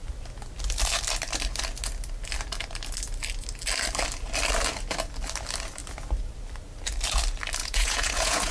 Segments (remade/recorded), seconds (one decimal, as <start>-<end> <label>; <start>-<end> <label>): 0.0-7.6 recorded; 7.6-8.5 remade